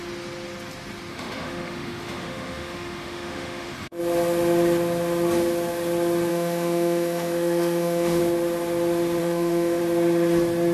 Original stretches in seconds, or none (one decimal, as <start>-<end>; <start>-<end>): 0.0-1.1; 4.0-6.3; 8.2-9.2; 9.8-10.7